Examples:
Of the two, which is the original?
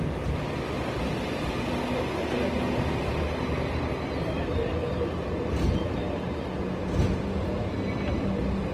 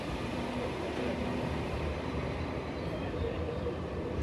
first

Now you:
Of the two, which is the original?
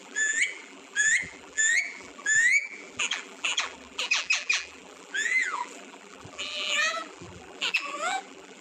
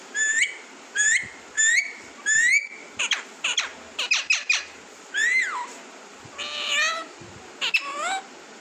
second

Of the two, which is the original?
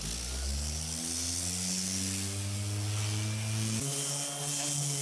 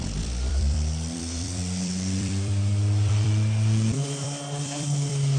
first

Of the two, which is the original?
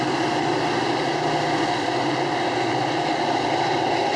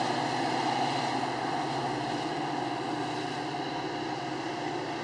second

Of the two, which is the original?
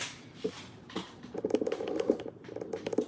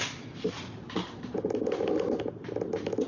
second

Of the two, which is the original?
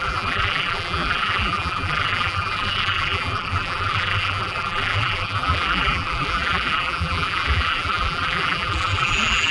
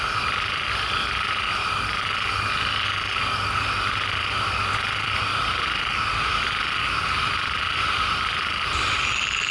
second